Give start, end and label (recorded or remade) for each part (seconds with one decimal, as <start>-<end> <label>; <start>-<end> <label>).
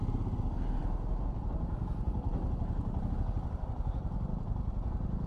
0.0-5.3 recorded